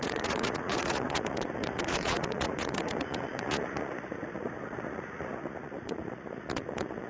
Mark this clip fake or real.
fake